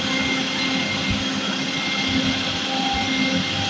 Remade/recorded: recorded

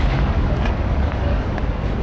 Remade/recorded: remade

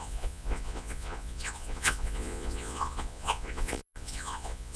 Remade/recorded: remade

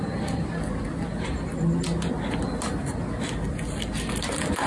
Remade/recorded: recorded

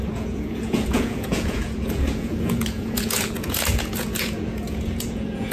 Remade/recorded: remade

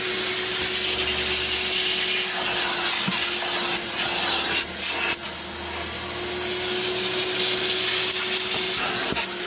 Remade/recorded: recorded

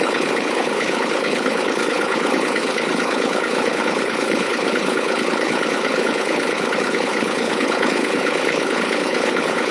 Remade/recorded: remade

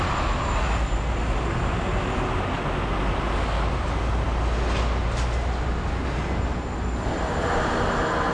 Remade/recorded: recorded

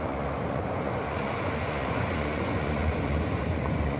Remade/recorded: remade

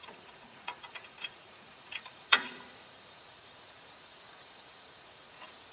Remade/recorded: remade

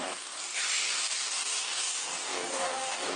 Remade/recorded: remade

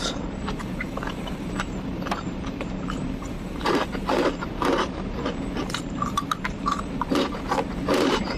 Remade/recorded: remade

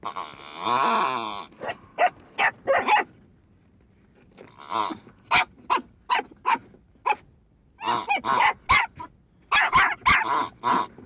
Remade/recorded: recorded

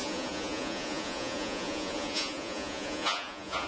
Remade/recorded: remade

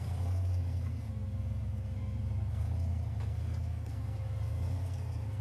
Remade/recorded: remade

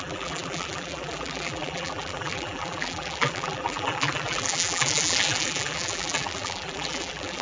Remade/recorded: remade